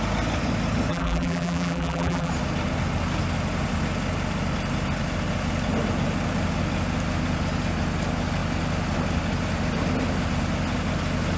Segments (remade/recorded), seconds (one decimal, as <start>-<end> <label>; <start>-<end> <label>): 0.0-0.9 recorded; 0.9-2.3 remade; 2.3-11.4 recorded